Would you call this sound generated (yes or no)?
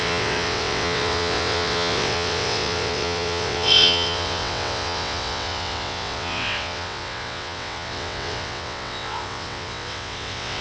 yes